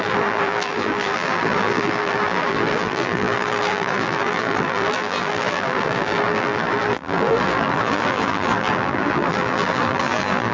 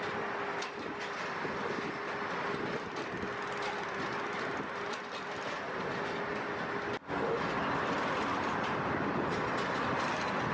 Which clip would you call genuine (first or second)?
second